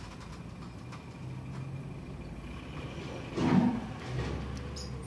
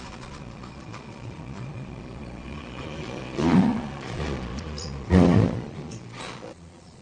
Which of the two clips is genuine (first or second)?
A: first